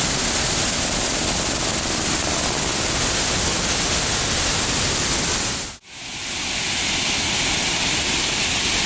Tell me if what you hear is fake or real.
real